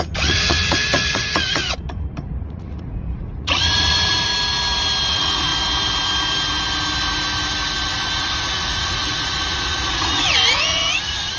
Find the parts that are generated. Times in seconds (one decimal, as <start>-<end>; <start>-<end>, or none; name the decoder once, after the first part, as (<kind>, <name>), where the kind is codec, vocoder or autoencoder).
0.0-4.3 (vocoder, Vocos); 5.1-5.5; 8.2-11.4